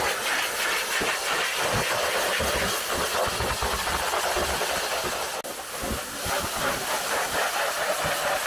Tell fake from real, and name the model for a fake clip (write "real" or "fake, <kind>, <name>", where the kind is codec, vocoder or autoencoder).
real